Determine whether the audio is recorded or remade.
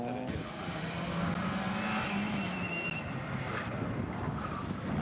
recorded